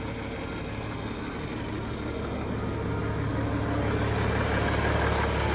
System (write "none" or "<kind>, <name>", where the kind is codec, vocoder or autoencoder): none